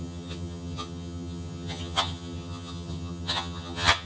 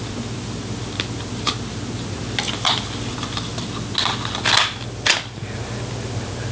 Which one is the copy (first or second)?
first